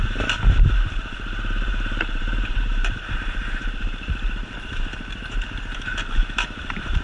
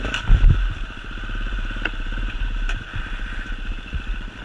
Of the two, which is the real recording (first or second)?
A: second